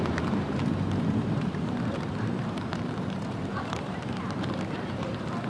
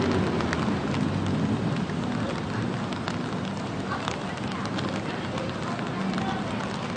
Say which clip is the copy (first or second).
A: first